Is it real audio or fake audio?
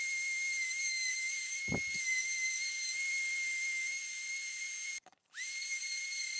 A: fake